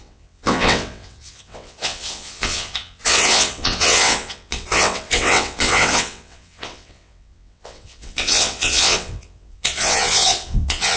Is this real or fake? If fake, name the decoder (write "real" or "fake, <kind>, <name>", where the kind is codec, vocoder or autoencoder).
fake, vocoder, WaveNeXt